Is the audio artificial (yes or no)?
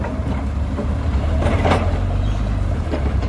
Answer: yes